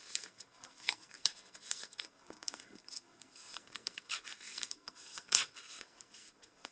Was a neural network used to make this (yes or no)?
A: yes